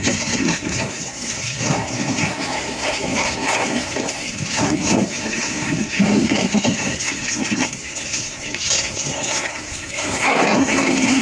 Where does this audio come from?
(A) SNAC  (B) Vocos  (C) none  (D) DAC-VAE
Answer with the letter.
A